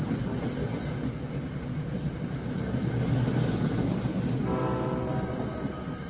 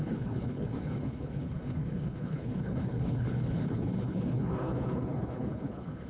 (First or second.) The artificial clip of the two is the second